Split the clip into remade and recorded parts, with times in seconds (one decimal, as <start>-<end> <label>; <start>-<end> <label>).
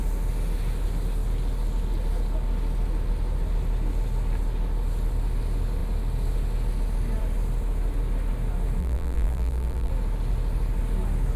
0.0-8.8 recorded; 8.8-9.9 remade; 9.9-11.4 recorded